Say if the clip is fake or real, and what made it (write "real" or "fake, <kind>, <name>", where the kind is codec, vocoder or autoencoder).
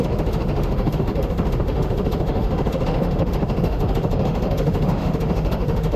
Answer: fake, autoencoder, DAC-VAE